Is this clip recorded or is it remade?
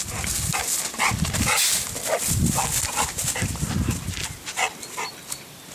recorded